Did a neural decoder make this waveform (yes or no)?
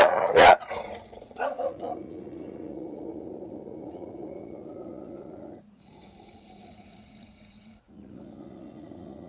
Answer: yes